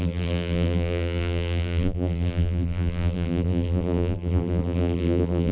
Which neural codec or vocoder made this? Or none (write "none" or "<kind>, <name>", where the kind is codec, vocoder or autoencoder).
vocoder, BigVGAN v2